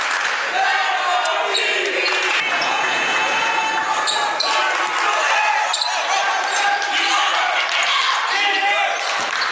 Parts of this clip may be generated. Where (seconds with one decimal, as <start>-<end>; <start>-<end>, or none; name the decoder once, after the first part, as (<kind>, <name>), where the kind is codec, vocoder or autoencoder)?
2.0-3.5 (vocoder, Vocos)